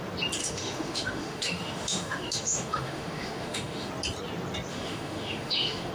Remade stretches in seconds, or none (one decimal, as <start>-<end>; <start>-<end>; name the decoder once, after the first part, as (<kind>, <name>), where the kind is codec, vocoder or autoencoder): 0.4-3.9 (autoencoder, DAC-VAE); 4.7-5.9